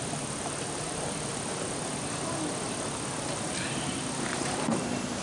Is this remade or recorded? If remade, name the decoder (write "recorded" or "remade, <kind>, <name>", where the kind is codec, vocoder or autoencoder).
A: recorded